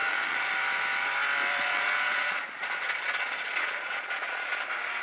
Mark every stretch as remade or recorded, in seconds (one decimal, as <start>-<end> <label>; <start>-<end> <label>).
0.0-0.5 remade; 0.5-1.6 recorded; 1.6-4.6 remade; 4.6-5.0 recorded